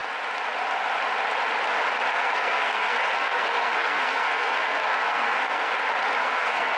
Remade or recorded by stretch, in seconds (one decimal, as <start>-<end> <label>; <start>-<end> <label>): 0.0-2.1 recorded; 2.1-5.7 remade; 5.7-6.2 recorded; 6.2-6.8 remade